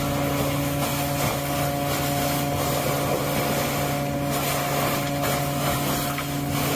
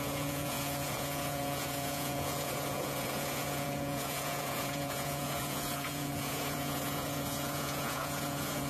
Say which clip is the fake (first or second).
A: second